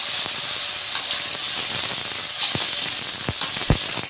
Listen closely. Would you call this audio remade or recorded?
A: recorded